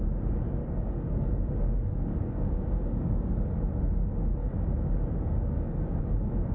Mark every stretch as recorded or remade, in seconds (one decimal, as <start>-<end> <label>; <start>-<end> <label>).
0.0-0.6 recorded; 0.6-3.6 remade; 3.6-4.4 recorded; 4.4-6.0 remade; 6.0-6.5 recorded